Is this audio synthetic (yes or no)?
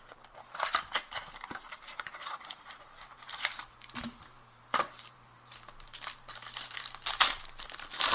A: yes